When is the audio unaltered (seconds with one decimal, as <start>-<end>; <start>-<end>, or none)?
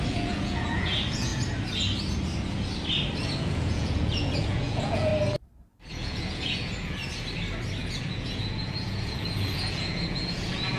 1.3-3.4; 5.1-5.9; 7.0-7.8